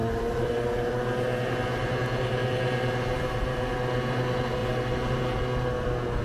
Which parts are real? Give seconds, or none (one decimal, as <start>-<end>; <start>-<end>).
3.7-4.6; 5.4-6.2